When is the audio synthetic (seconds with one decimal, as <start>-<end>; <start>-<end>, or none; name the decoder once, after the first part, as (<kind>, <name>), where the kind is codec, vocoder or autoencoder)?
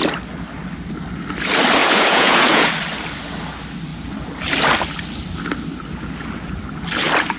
1.8-2.7 (vocoder, Vocos)